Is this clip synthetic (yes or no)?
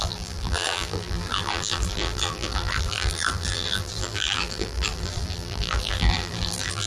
yes